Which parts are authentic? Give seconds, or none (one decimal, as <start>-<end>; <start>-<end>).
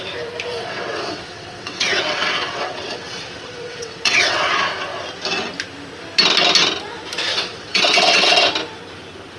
0.0-0.5; 4.5-7.3; 8.3-9.4